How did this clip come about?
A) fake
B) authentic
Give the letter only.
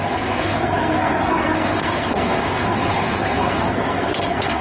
A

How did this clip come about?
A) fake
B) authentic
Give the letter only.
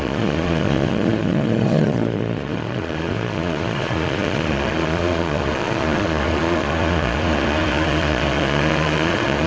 A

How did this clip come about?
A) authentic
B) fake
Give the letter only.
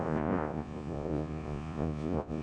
B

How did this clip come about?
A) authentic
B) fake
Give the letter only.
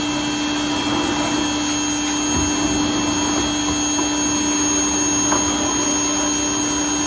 A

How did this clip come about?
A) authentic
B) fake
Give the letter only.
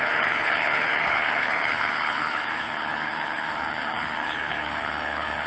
B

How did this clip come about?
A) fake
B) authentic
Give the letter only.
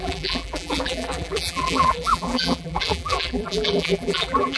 A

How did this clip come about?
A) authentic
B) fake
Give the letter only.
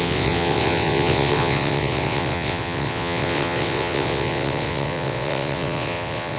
B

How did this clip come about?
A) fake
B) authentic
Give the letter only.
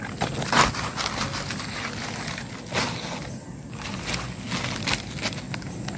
B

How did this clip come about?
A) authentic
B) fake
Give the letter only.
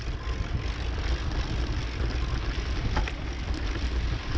A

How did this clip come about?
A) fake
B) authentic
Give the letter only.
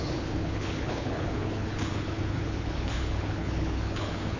A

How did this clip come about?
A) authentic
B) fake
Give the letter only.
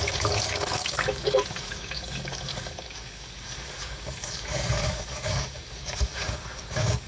B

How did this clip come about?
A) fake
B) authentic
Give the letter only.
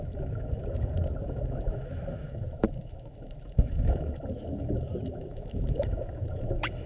A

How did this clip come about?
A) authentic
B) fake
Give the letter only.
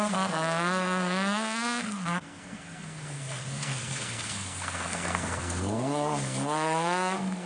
B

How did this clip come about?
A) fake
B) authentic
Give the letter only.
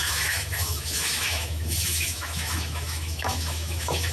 A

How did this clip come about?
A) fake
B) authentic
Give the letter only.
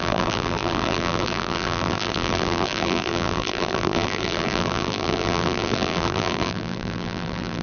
A